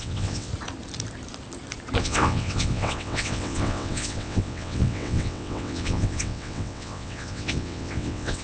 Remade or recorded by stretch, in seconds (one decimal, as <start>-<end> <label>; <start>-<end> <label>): 0.0-0.5 remade; 0.5-2.0 recorded; 2.0-8.4 remade